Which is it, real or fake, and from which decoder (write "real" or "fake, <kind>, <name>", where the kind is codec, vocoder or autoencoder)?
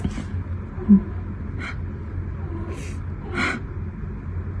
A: real